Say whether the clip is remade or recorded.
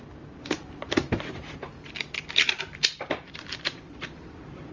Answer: remade